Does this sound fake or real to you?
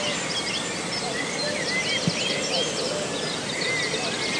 real